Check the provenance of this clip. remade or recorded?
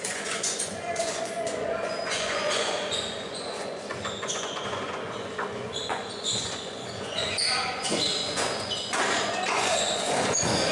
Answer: remade